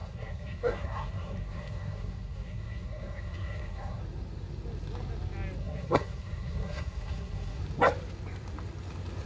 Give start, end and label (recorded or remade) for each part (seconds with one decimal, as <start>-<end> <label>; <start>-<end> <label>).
0.0-4.0 remade; 4.0-5.6 recorded; 5.6-7.6 remade; 7.6-9.3 recorded